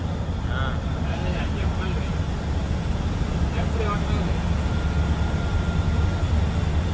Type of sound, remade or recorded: recorded